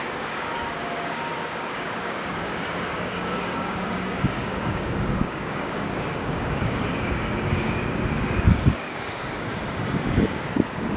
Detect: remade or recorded remade